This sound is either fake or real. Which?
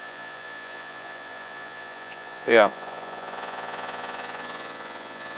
fake